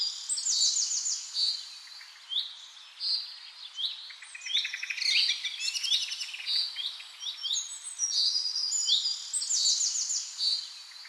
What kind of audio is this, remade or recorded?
recorded